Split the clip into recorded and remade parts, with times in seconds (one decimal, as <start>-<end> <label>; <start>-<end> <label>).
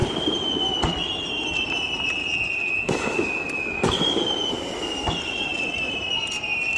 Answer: 0.0-5.5 recorded; 5.5-6.1 remade; 6.1-6.8 recorded